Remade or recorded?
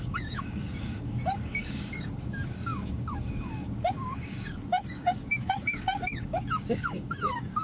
remade